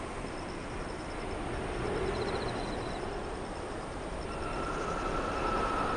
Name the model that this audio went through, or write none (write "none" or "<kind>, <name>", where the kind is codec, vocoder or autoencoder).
none